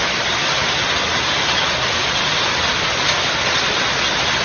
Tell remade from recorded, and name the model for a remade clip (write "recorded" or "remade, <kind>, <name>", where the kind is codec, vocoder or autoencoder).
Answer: recorded